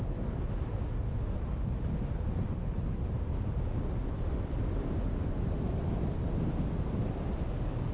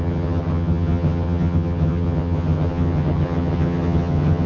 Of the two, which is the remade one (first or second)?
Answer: second